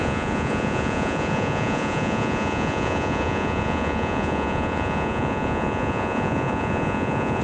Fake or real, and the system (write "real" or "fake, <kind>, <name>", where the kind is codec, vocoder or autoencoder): fake, vocoder, Vocos